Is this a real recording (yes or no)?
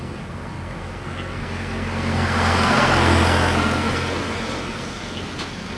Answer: no